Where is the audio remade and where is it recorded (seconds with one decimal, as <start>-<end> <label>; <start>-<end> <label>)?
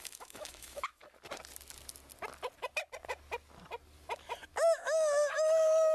0.0-1.0 remade; 1.0-4.5 recorded; 4.5-5.9 remade